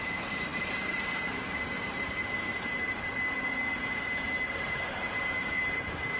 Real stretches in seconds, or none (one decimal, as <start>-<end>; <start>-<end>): 2.2-4.9